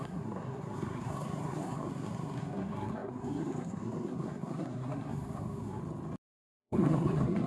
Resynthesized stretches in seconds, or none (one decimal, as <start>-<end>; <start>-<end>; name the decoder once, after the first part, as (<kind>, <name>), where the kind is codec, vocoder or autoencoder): 0.0-5.8 (codec, SNAC); 6.6-7.5